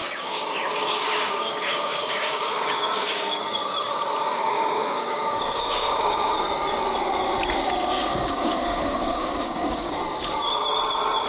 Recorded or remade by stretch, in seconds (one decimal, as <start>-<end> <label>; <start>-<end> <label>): 0.0-3.4 remade; 3.4-4.3 recorded; 4.3-6.3 remade; 6.3-8.1 recorded; 8.1-10.0 remade; 10.0-11.3 recorded